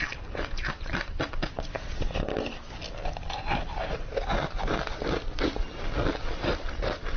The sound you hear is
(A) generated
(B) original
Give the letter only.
B